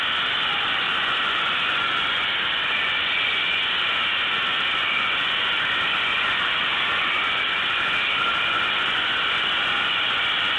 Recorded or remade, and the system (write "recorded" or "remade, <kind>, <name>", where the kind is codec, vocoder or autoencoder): remade, vocoder, Vocos